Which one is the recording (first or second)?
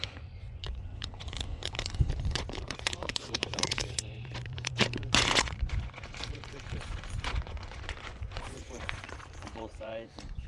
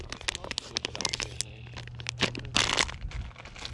second